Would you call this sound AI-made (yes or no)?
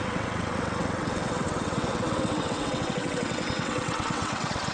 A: yes